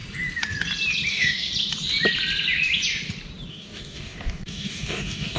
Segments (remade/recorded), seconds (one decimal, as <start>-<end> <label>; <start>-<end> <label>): 0.0-1.1 recorded; 1.1-1.5 remade; 1.5-3.5 recorded; 3.5-5.4 remade